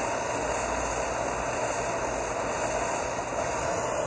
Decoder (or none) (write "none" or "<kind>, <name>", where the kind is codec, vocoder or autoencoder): none